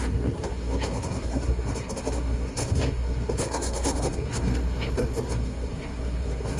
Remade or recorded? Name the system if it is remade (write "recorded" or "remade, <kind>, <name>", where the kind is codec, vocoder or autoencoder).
remade, codec, SNAC